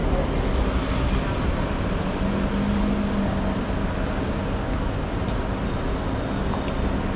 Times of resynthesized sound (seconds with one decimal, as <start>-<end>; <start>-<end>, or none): none

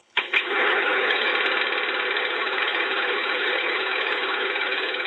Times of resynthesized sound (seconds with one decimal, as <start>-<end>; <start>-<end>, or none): 0.0-1.3; 2.2-5.1

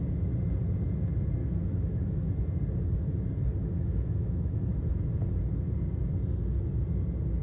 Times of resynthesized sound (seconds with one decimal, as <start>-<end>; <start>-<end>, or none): 1.4-2.3; 3.6-4.8

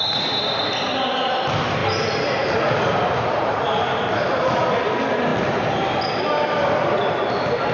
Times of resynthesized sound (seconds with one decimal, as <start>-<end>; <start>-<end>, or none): none

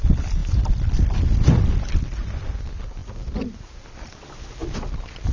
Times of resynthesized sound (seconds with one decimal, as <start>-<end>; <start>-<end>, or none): none

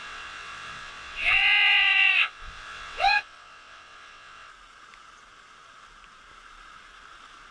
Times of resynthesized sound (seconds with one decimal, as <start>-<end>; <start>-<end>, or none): 0.0-4.5

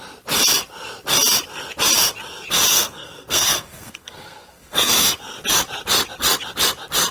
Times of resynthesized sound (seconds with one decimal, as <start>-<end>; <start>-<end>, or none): 2.7-4.9